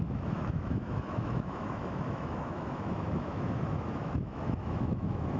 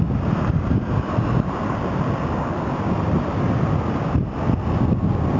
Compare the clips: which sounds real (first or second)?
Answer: second